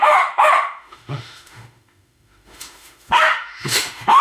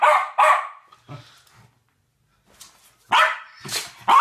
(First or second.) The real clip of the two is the second